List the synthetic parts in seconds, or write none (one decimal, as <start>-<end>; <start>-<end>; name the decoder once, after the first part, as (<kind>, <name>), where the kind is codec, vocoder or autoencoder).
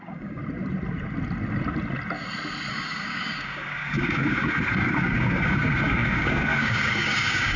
0.0-0.4 (codec, DAC); 2.7-7.6